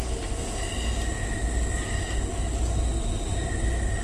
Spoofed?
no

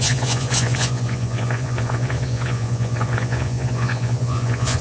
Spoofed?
yes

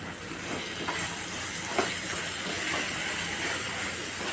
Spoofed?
no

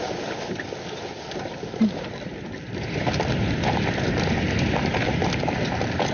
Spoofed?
no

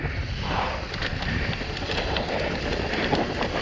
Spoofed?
no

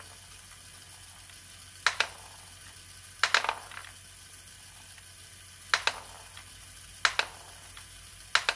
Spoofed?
no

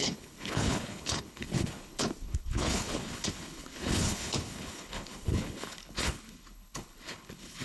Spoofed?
yes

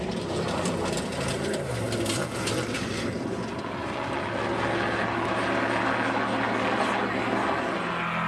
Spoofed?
no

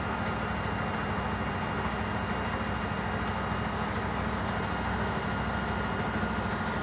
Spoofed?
no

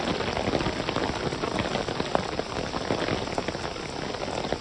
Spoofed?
no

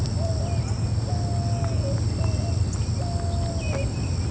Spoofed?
no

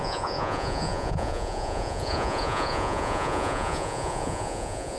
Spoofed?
yes